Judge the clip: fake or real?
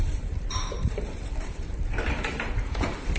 fake